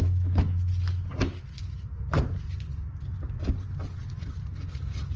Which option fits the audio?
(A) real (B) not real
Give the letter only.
A